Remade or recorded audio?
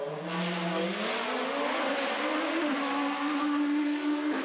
recorded